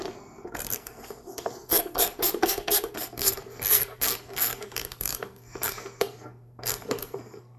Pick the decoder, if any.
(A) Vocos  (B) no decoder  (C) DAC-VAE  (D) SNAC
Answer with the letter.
D